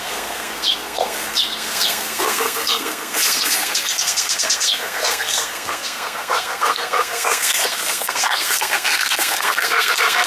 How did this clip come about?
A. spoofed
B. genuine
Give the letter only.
A